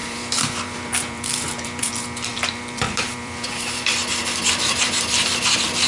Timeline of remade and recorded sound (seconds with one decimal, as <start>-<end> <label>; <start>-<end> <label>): 0.0-1.9 remade; 1.9-2.3 recorded; 2.3-5.9 remade